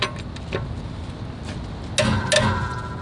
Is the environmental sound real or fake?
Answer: real